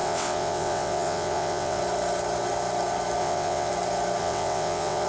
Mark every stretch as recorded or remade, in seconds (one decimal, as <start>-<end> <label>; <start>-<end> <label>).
0.0-1.8 remade; 1.8-3.2 recorded; 3.2-3.7 remade; 3.7-4.2 recorded; 4.2-5.1 remade

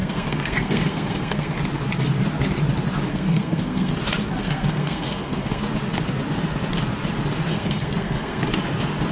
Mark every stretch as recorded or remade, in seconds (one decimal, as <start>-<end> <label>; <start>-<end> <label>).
0.0-1.6 remade; 1.6-3.1 recorded; 3.1-3.9 remade; 3.9-4.4 recorded; 4.4-5.6 remade; 5.6-7.5 recorded; 7.5-8.4 remade; 8.4-9.1 recorded

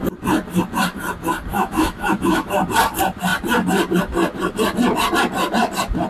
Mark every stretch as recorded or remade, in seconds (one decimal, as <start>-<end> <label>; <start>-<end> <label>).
0.0-1.5 recorded; 1.5-2.5 remade; 2.5-6.1 recorded

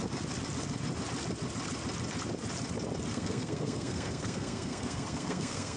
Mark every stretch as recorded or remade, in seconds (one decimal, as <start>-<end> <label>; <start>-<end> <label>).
0.0-3.1 recorded; 3.1-5.8 remade